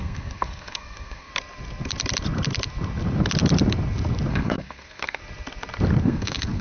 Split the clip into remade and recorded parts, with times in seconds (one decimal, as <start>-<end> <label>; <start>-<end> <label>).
0.0-1.3 remade; 1.3-4.3 recorded; 4.3-5.2 remade; 5.2-6.0 recorded; 6.0-6.6 remade